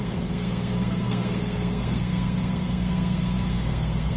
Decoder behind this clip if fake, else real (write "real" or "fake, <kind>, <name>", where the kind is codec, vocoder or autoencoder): fake, codec, SNAC